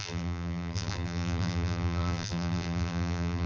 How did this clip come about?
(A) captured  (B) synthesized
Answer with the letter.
B